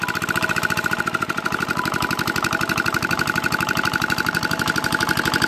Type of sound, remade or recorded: remade